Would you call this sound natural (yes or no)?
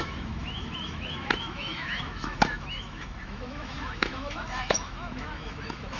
no